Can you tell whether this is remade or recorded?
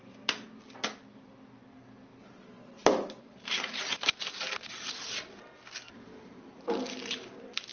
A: recorded